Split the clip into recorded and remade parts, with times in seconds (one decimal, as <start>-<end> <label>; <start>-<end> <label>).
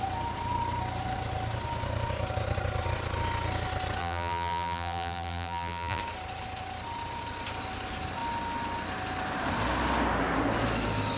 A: 0.0-4.0 recorded; 4.0-6.0 remade; 6.0-11.2 recorded